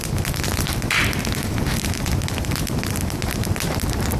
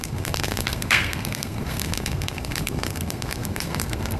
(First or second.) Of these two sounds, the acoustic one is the first